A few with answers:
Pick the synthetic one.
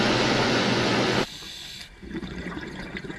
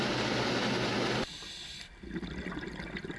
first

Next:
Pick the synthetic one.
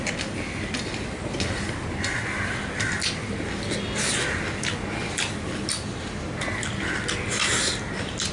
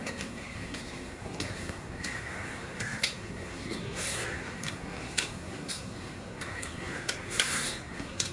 second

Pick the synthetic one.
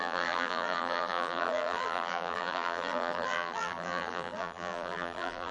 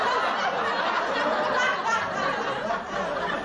first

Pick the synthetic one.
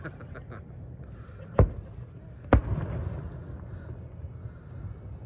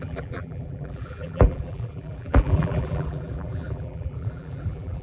second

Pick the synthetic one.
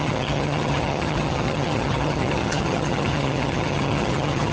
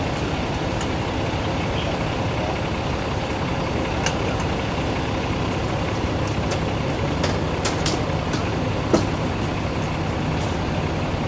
first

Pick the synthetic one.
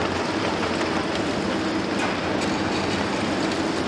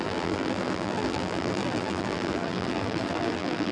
second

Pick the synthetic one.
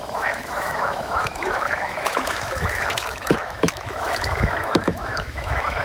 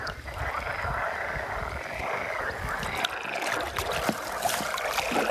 first